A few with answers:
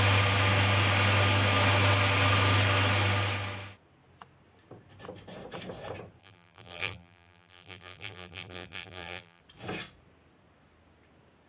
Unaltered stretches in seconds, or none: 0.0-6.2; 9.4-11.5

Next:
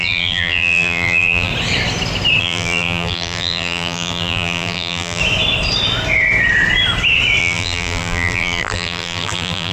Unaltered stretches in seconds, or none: 1.5-2.4; 5.2-7.4

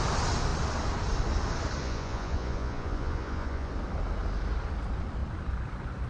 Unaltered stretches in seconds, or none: 0.0-1.8; 3.7-6.1